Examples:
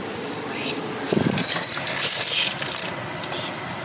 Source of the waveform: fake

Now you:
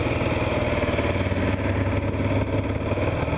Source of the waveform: real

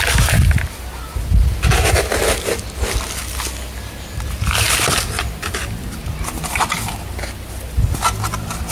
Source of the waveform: real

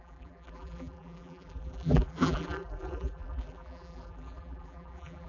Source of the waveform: fake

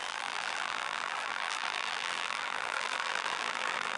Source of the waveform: fake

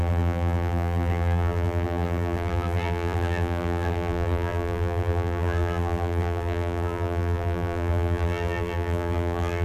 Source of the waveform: fake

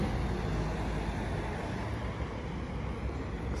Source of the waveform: real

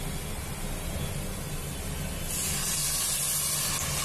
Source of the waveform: real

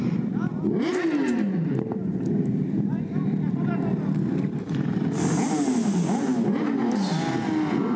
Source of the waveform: real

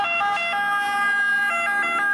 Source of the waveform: real